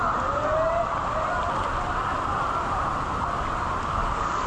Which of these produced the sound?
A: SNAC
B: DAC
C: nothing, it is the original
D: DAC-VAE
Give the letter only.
C